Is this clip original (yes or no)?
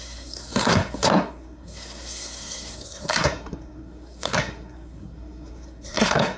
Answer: no